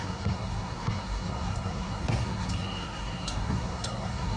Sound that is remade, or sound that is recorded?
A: remade